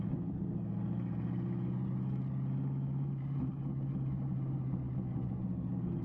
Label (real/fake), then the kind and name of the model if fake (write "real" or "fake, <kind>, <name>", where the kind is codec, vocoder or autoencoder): real